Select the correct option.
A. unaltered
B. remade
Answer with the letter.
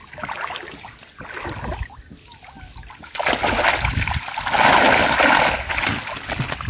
A